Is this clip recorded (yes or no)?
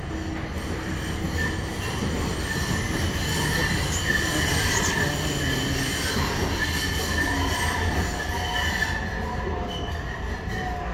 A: yes